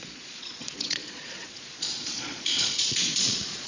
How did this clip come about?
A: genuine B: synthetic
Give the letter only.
B